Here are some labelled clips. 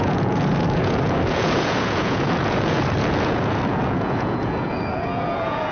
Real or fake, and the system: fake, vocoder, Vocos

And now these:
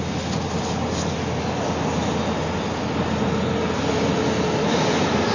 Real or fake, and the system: real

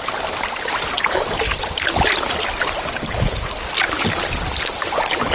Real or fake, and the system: real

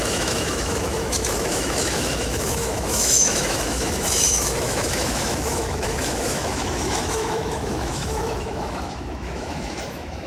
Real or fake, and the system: fake, autoencoder, DAC-VAE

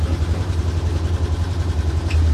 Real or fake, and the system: fake, vocoder, BigVGAN v2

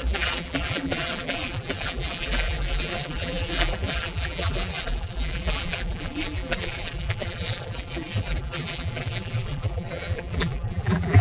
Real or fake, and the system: fake, vocoder, BigVGAN v2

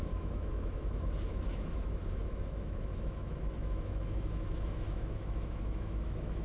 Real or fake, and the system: fake, autoencoder, DAC-VAE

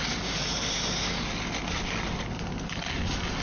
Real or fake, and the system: real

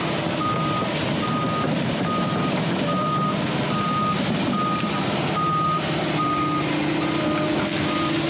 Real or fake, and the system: real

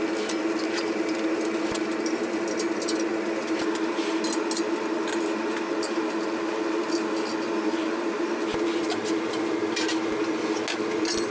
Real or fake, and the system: real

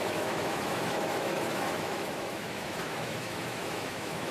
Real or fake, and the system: fake, autoencoder, DAC-VAE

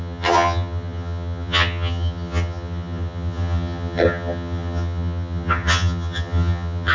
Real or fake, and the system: fake, vocoder, HiFi-GAN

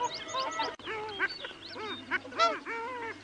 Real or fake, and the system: real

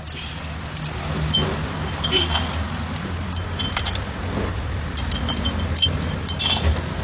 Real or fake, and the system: real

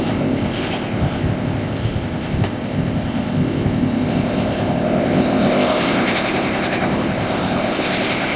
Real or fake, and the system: fake, codec, ZipCodec